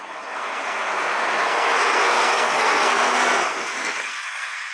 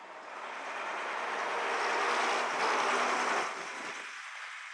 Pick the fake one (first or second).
first